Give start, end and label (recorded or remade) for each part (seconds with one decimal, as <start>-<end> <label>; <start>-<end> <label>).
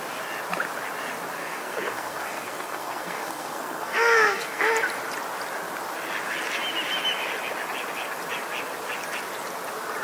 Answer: 0.0-1.4 recorded; 1.4-4.7 remade; 4.7-10.0 recorded